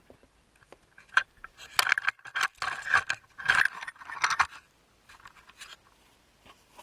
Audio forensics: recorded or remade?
recorded